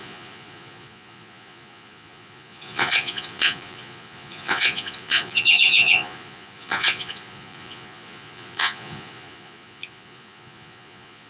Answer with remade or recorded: remade